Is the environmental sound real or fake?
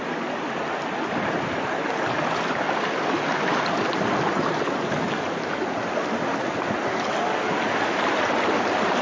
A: real